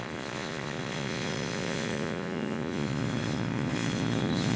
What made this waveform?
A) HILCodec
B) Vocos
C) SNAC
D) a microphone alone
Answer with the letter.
B